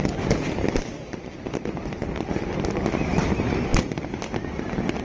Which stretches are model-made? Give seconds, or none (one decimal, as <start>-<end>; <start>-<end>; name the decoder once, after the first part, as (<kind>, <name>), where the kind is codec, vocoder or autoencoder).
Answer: none